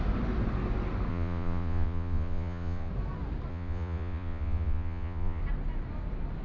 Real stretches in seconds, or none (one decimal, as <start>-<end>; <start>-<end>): 0.0-1.1; 2.9-3.5; 5.4-6.4